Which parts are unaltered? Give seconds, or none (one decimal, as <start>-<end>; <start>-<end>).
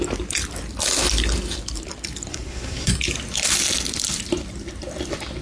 0.0-2.3; 2.9-5.4